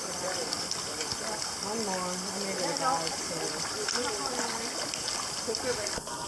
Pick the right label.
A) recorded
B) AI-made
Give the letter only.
A